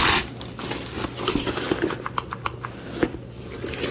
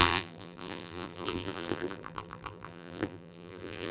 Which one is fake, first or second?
second